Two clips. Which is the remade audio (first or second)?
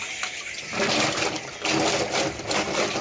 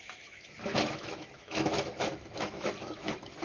second